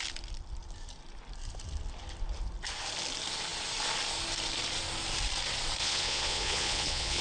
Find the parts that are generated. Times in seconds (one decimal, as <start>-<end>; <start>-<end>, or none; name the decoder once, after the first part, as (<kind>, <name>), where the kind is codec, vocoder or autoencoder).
5.8-7.2 (vocoder, Vocos)